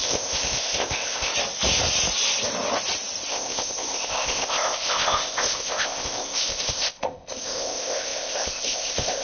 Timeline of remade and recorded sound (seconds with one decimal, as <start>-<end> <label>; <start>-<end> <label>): 0.0-1.3 remade; 1.3-3.3 recorded; 3.3-9.2 remade